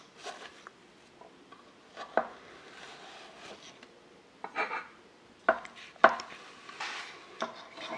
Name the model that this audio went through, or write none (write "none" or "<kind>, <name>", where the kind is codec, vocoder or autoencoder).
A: none